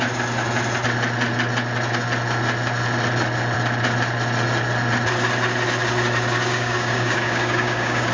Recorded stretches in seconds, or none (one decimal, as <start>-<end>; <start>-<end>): 0.0-6.5